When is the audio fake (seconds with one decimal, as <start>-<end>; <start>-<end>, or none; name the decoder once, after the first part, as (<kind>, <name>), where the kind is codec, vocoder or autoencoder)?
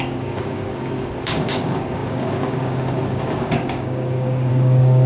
0.0-5.1 (codec, DAC)